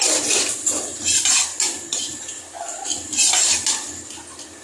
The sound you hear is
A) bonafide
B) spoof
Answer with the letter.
A